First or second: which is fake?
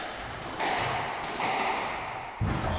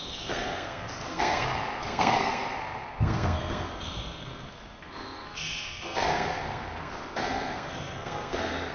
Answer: second